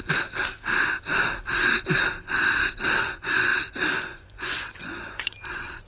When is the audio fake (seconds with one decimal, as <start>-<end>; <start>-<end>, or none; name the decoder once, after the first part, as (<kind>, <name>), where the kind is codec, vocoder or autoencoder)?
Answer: 3.0-3.5 (vocoder, Vocos); 4.0-5.9